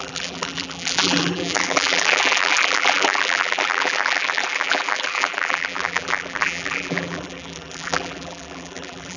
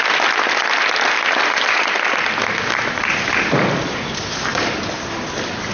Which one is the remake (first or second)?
first